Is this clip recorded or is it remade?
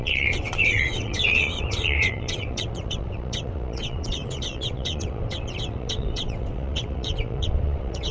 remade